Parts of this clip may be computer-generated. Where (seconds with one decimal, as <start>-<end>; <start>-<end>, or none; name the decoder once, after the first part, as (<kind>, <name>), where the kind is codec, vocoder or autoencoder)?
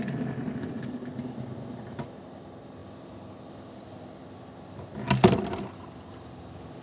none